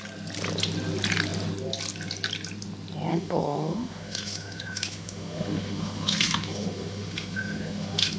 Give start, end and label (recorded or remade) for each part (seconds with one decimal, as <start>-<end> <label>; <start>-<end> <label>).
0.0-3.1 recorded; 3.1-8.2 remade